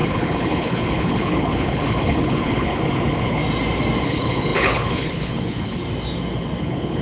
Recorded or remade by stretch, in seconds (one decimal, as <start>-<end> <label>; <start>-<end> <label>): 0.0-3.4 remade; 3.4-4.0 recorded; 4.0-5.8 remade; 5.8-6.6 recorded; 6.6-7.0 remade